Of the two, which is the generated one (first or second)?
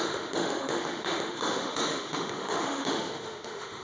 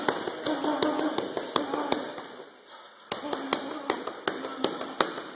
first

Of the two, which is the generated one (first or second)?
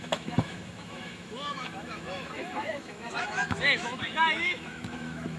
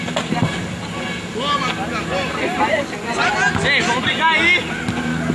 first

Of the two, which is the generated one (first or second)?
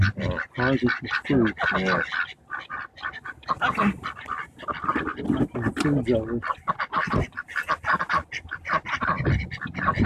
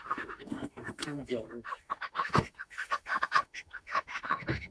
second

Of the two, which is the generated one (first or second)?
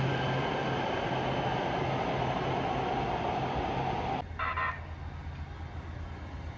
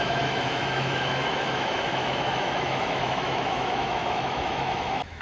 second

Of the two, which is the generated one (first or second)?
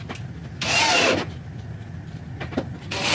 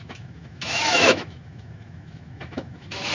second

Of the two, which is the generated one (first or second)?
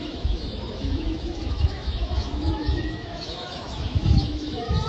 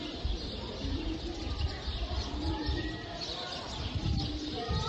first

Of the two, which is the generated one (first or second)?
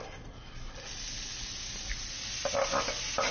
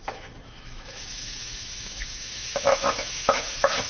second